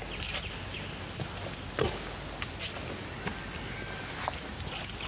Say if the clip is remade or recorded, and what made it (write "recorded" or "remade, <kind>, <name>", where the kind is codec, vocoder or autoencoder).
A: recorded